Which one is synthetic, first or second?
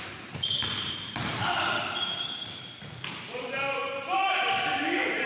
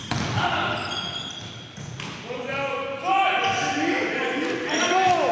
first